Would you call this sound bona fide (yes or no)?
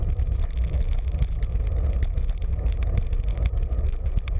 yes